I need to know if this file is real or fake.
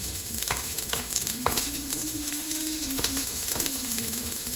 fake